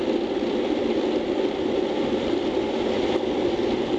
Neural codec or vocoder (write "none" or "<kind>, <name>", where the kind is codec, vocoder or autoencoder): none